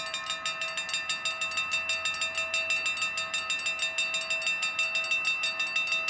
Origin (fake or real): real